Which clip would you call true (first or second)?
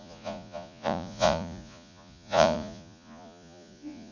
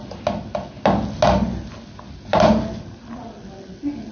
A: second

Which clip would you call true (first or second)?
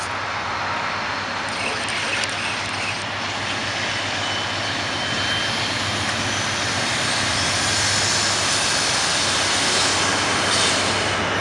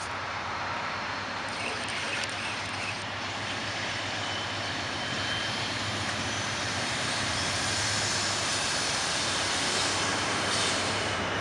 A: first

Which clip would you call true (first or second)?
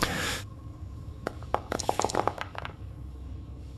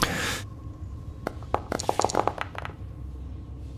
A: second